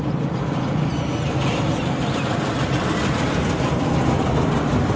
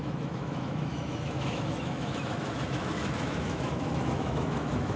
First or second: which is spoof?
second